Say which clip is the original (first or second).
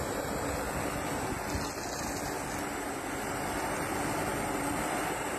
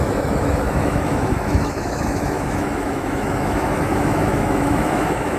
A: first